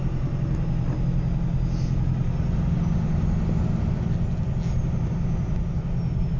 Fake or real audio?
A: real